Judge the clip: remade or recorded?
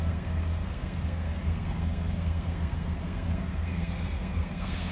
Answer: remade